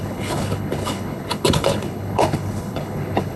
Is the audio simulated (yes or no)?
yes